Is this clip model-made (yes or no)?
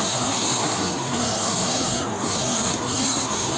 yes